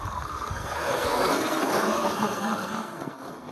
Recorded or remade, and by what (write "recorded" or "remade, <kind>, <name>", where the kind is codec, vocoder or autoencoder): remade, codec, SNAC